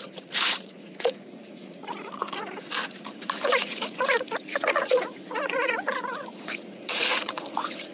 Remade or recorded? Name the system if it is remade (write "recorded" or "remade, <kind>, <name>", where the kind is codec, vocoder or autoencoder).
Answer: remade, vocoder, Vocos